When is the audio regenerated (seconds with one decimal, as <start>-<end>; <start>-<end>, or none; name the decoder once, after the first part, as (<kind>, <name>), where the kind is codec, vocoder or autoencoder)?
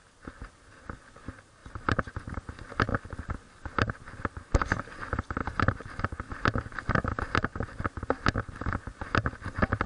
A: 1.6-2.5 (vocoder, BigVGAN v2); 5.4-6.0